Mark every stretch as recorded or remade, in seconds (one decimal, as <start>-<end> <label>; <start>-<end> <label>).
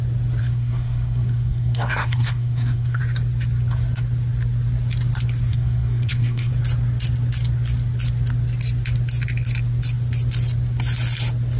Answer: 0.0-0.4 recorded; 0.4-3.0 remade; 3.0-5.5 recorded; 5.5-6.5 remade; 6.5-11.6 recorded